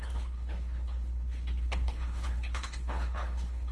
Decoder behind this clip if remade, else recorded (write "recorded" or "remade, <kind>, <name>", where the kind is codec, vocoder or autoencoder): remade, codec, HILCodec